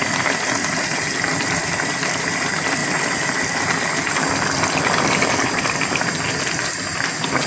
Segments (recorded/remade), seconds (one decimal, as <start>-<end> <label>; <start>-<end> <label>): 0.0-7.5 recorded